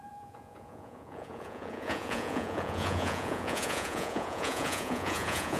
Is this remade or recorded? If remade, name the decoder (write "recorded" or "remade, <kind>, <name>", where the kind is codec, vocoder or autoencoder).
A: remade, vocoder, Vocos